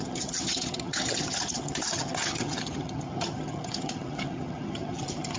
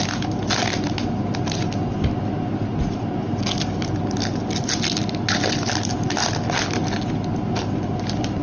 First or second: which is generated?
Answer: first